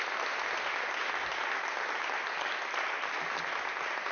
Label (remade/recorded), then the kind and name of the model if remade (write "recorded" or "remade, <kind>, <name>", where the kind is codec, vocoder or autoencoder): recorded